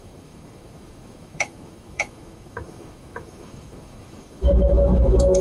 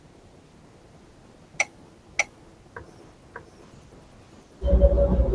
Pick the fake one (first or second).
first